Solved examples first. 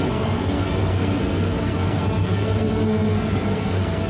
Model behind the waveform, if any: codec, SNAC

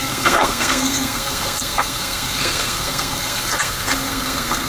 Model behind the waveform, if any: codec, SNAC